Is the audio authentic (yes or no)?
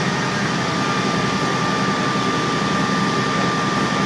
yes